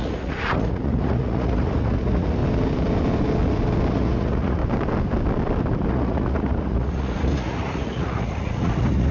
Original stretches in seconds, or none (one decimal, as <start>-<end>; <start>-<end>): 2.4-3.9; 4.6-5.9